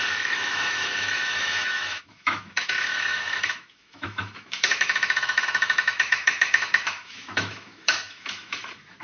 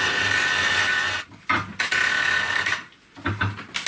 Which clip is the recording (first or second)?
second